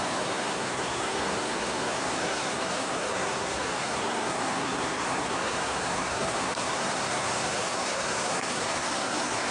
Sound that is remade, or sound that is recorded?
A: remade